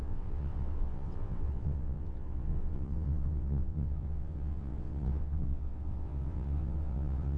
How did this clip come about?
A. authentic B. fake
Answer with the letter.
B